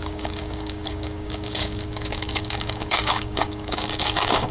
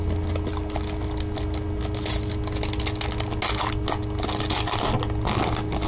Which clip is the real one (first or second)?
second